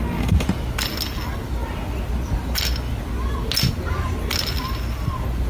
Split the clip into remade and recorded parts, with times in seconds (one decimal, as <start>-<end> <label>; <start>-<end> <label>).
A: 0.0-5.5 recorded